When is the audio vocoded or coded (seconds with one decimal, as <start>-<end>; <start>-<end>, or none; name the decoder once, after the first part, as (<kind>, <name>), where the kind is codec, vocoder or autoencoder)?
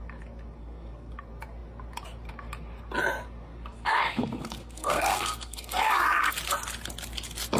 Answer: 0.6-1.1 (codec, SNAC); 3.5-6.3